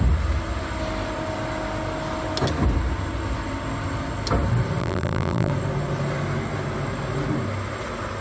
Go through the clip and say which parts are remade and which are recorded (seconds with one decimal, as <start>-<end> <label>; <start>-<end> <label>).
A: 0.0-4.8 recorded; 4.8-5.5 remade; 5.5-8.2 recorded